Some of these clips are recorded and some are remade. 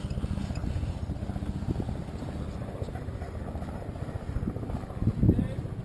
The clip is recorded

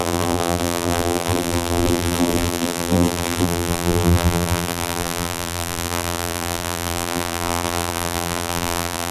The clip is remade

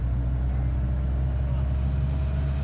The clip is recorded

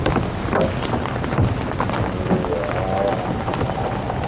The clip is recorded